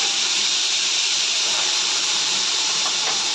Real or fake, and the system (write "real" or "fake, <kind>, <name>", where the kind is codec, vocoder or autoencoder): fake, vocoder, BigVGAN v2